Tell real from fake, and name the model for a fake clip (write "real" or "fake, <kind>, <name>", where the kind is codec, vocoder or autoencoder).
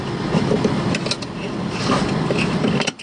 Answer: real